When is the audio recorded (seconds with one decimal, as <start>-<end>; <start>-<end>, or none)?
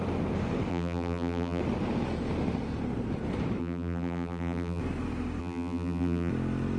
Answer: 0.0-0.7; 1.6-3.6; 4.8-5.4; 6.3-6.8